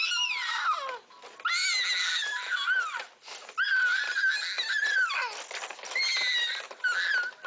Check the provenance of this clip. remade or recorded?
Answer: recorded